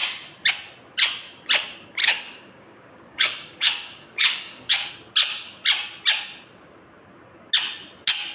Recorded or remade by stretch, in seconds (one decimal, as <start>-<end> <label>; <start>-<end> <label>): 0.0-2.0 recorded; 2.0-4.9 remade; 4.9-8.3 recorded